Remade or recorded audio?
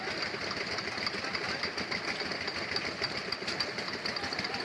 recorded